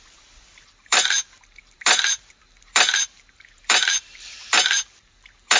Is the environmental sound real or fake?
fake